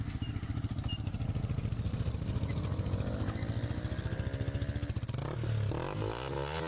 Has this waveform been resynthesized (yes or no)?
no